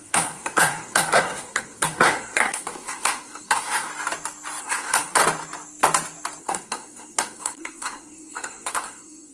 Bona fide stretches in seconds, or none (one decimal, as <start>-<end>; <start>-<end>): 3.9-4.6; 5.2-6.4